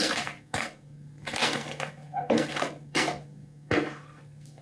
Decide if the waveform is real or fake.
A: fake